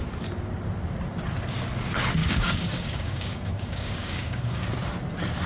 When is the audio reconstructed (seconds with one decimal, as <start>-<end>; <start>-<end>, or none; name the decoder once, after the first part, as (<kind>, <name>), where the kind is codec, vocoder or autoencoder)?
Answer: 2.2-4.6 (codec, DAC)

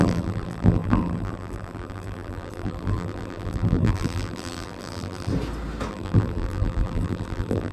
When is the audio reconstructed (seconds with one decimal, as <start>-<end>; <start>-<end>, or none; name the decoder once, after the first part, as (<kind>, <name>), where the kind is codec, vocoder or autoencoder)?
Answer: 0.0-5.3 (vocoder, BigVGAN v2); 5.9-7.7

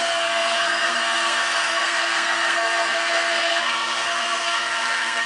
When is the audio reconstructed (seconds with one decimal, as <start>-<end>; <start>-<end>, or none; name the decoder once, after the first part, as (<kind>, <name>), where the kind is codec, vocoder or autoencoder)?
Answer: 0.0-5.3 (codec, SNAC)

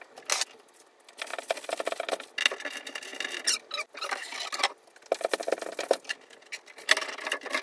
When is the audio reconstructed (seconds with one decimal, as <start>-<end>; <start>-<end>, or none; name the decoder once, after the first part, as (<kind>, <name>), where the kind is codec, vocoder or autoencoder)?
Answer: none

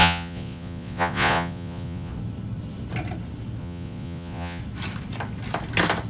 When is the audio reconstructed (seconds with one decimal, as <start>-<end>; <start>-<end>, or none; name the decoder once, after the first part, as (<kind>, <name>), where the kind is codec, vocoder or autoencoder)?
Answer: 0.0-2.1 (vocoder, Vocos); 3.6-4.6

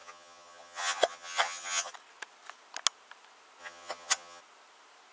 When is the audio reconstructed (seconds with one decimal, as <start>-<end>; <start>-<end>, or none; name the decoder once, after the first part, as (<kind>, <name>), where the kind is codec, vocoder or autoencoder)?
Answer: 0.0-1.9 (vocoder, HiFi-GAN); 3.6-4.4